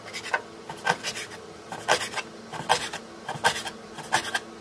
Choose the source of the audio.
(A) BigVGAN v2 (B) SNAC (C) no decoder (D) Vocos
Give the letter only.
C